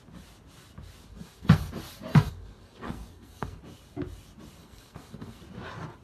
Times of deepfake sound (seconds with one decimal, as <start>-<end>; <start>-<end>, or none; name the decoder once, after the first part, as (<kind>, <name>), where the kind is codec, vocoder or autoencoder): 1.1-1.7 (codec, SNAC); 2.1-3.6; 4.6-5.4